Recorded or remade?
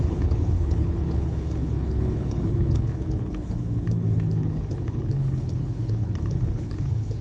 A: remade